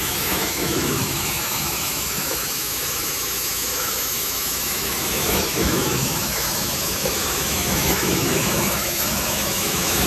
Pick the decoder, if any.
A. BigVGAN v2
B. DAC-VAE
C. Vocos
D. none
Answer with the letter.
B